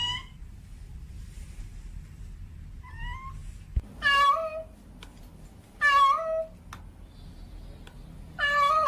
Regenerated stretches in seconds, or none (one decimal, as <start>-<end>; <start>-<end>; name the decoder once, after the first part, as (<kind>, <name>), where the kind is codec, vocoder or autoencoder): none